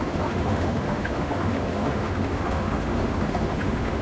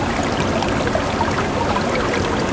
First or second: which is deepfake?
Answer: first